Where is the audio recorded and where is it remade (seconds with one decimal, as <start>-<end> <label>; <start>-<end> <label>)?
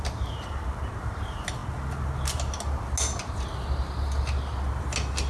0.0-5.3 recorded